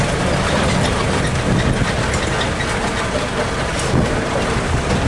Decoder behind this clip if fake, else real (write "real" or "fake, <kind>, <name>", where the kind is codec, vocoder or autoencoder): real